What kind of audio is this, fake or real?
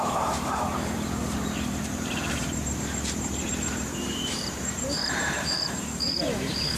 fake